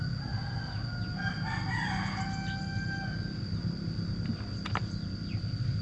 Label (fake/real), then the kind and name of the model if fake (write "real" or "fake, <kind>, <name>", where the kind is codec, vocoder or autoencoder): real